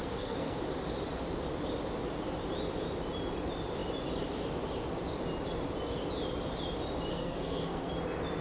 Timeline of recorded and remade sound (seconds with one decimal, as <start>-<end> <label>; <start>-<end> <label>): 0.0-0.6 remade; 0.6-7.1 recorded; 7.1-7.9 remade; 7.9-8.4 recorded

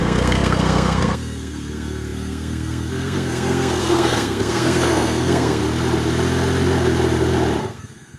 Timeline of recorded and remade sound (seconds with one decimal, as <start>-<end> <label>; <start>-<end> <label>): 0.0-5.6 remade; 5.6-7.6 recorded; 7.6-8.2 remade

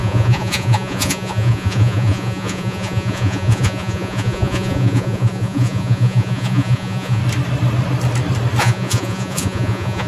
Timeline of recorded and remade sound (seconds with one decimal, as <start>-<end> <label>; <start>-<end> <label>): 0.0-7.2 remade; 7.2-8.6 recorded; 8.6-10.1 remade

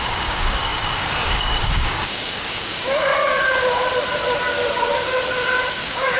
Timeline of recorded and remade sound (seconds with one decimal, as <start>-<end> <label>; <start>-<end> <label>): 0.0-3.1 remade; 3.1-5.7 recorded; 5.7-6.2 remade

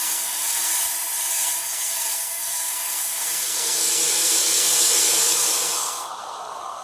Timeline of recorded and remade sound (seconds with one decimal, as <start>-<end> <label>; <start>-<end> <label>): 0.0-0.7 remade; 0.7-1.3 recorded; 1.3-6.8 remade

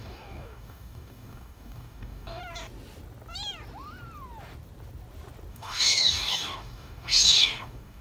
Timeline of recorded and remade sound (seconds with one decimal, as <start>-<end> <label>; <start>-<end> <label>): 0.0-2.4 remade; 2.4-5.5 recorded; 5.5-8.0 remade